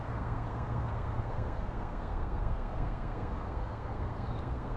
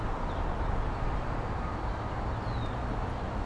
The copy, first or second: first